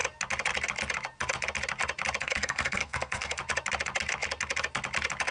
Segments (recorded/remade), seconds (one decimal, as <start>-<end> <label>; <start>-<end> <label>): 0.0-2.2 recorded; 2.2-3.4 remade; 3.4-5.3 recorded